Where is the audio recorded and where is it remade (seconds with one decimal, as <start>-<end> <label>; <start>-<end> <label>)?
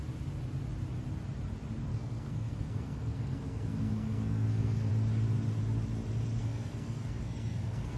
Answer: 0.0-1.9 recorded; 1.9-4.9 remade; 4.9-6.4 recorded; 6.4-8.0 remade